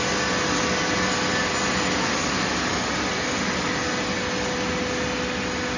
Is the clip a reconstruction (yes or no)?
no